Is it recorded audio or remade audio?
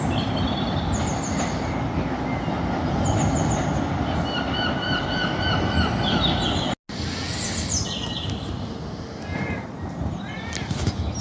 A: recorded